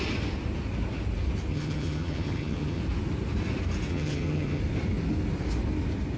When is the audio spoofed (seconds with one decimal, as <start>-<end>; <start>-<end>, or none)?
1.5-2.8; 3.9-4.6